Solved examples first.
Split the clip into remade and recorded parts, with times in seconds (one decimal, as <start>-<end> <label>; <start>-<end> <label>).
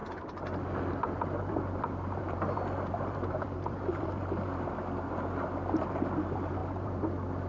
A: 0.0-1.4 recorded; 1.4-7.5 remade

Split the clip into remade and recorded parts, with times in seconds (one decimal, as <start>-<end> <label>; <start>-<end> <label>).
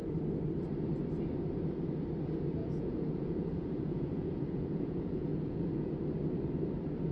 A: 0.0-2.6 recorded; 2.6-5.9 remade; 5.9-7.1 recorded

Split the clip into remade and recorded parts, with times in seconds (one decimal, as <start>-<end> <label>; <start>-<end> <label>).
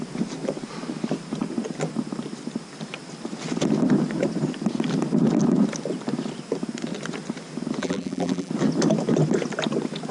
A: 0.0-7.8 recorded; 7.8-8.5 remade; 8.5-10.1 recorded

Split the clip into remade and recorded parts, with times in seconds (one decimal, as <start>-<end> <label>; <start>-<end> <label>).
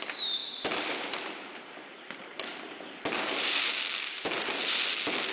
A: 0.0-0.4 recorded; 0.4-2.1 remade; 2.1-5.3 recorded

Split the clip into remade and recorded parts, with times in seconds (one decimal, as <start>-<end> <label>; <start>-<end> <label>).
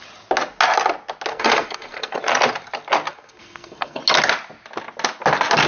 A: 0.0-1.3 recorded; 1.3-2.2 remade; 2.2-3.1 recorded; 3.1-4.0 remade; 4.0-5.7 recorded